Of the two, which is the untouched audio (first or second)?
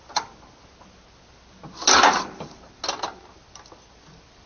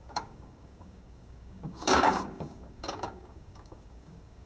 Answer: first